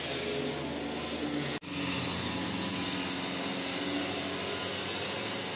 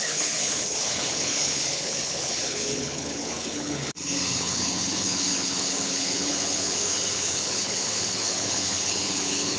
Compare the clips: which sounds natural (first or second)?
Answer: first